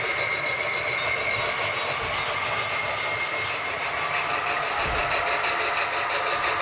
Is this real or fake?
real